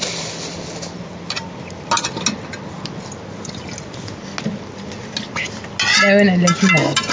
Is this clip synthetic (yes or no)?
no